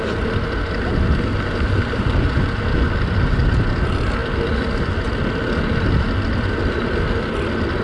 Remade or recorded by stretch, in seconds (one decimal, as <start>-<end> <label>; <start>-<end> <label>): 0.0-7.8 recorded